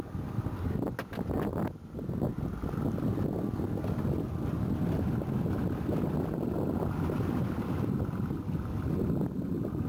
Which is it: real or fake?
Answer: real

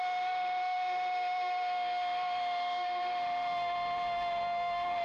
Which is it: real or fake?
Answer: fake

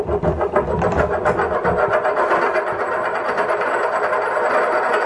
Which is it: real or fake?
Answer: fake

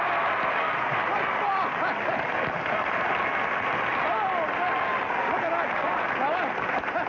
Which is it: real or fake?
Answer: real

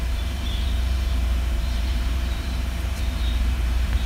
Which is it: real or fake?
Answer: fake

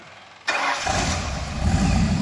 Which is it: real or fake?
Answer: real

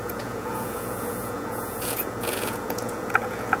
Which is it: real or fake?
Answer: fake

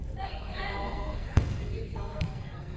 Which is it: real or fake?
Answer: fake